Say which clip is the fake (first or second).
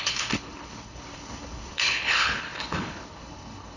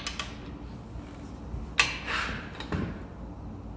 first